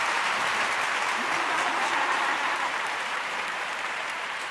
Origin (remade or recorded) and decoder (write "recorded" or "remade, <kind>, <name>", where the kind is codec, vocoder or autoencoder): remade, vocoder, BigVGAN v2